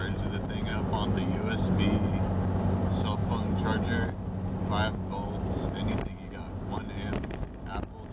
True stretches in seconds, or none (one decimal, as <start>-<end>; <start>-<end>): 0.0-8.1